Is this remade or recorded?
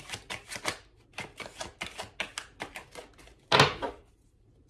recorded